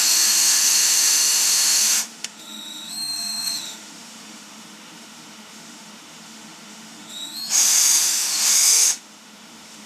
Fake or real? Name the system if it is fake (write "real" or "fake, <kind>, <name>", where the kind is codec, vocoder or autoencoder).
fake, autoencoder, DAC-VAE